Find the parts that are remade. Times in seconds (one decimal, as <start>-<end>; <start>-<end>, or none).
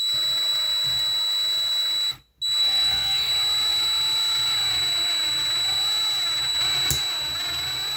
2.6-3.3